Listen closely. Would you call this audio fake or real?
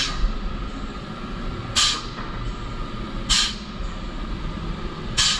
real